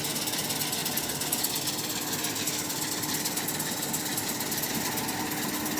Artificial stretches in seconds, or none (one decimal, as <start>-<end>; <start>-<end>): none